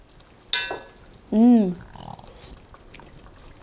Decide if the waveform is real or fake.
real